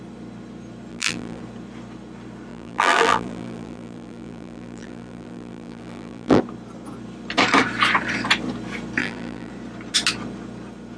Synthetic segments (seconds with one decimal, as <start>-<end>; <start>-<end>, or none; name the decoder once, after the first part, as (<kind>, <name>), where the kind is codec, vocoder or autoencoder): 0.9-1.4 (vocoder, BigVGAN v2); 2.5-6.4; 9.0-9.5